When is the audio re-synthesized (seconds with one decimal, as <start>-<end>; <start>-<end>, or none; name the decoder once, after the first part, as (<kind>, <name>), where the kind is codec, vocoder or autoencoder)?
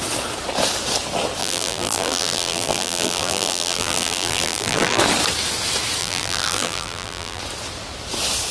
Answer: 1.4-5.0 (vocoder, BigVGAN v2); 6.0-7.4